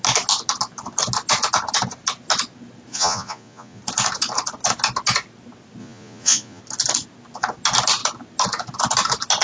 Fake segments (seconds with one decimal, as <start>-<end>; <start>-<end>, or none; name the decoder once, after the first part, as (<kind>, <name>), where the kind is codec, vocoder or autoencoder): 2.9-3.8 (vocoder, Vocos); 5.8-6.6